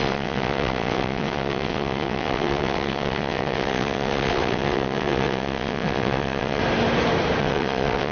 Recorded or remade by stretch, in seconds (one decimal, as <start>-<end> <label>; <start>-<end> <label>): 0.0-6.6 remade; 6.6-7.4 recorded; 7.4-8.1 remade